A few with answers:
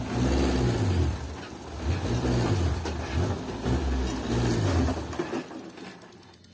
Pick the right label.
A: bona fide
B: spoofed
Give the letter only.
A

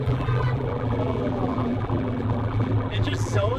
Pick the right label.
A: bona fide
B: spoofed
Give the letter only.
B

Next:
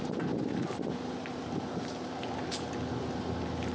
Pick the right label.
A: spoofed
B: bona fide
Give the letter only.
B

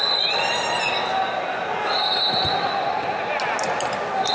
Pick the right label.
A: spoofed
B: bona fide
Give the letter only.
B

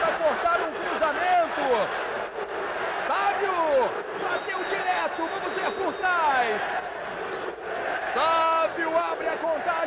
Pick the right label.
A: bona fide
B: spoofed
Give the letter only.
A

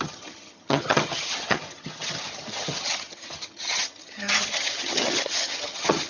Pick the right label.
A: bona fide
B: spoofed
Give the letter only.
B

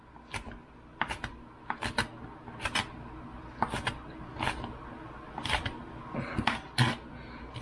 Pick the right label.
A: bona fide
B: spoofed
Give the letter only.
A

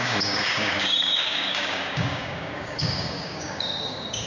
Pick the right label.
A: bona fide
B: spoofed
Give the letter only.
B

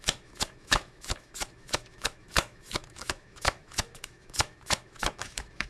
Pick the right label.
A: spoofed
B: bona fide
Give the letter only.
A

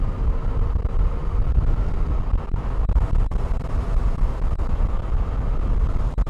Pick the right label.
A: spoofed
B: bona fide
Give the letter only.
B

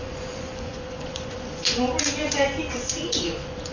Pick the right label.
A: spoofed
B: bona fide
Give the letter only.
A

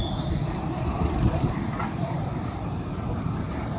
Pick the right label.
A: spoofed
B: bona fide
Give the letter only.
A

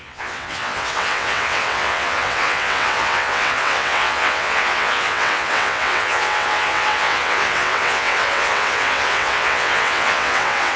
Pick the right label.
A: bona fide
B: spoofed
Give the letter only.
B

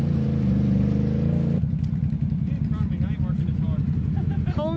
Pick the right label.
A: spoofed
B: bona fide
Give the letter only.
B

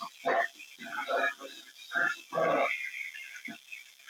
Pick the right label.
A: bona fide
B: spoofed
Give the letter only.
A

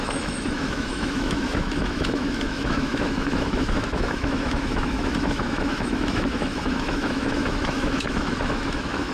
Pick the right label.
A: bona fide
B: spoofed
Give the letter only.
B